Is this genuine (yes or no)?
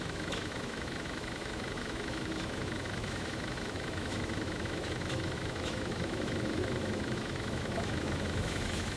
no